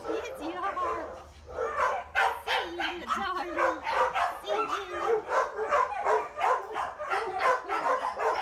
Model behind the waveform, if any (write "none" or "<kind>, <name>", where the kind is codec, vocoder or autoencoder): none